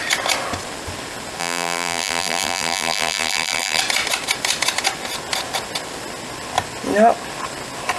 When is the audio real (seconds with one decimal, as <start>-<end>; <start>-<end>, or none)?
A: 0.0-1.4; 3.8-8.0